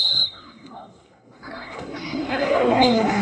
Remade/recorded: remade